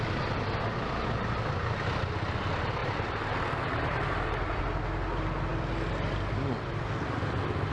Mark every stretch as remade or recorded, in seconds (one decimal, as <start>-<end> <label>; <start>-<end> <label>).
0.0-2.8 recorded; 2.8-4.6 remade; 4.6-7.7 recorded